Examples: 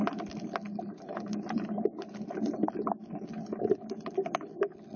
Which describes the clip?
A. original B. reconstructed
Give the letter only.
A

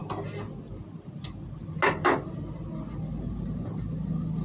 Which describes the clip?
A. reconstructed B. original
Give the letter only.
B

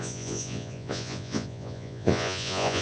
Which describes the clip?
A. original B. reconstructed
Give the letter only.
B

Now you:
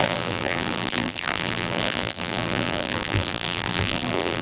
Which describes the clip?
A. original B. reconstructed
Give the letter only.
B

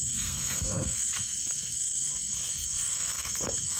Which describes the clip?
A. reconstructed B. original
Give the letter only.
A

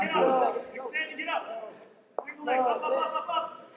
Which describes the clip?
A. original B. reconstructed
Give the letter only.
A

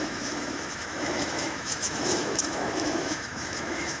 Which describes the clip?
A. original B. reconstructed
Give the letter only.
B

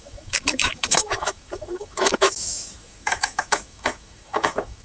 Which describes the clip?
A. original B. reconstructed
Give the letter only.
B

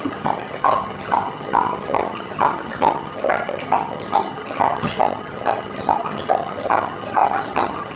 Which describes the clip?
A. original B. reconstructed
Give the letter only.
B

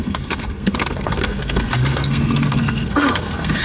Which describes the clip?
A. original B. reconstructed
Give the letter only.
B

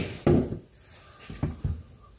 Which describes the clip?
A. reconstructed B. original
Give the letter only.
B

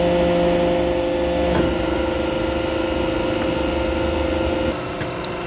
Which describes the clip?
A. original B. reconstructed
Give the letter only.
A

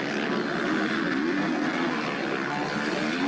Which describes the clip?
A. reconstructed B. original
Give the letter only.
B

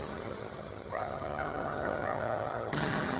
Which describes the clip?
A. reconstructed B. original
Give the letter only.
A